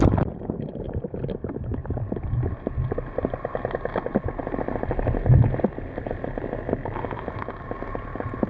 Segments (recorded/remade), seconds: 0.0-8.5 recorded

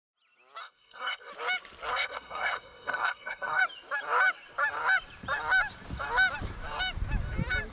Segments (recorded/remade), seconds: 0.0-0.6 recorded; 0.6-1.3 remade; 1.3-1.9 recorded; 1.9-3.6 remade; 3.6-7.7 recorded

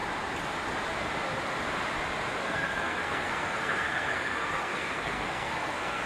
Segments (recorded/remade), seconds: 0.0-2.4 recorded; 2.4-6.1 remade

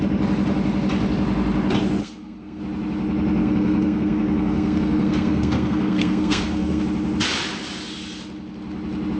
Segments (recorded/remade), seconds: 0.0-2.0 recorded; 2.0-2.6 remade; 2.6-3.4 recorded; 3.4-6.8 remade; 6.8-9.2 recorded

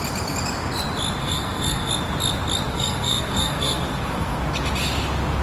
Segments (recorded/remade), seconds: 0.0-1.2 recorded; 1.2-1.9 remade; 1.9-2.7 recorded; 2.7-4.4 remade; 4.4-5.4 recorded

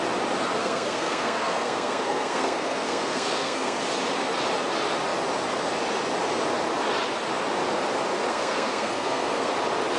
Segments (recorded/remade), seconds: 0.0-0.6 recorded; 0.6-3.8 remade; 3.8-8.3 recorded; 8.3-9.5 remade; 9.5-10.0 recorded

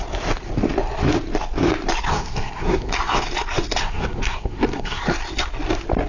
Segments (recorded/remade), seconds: 0.0-2.1 recorded; 2.1-2.9 remade; 2.9-3.8 recorded; 3.8-5.0 remade; 5.0-6.1 recorded

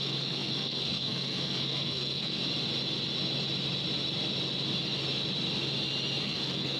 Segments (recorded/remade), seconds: 0.0-2.4 remade; 2.4-6.2 recorded; 6.2-6.8 remade